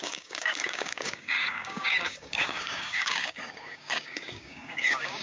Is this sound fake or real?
fake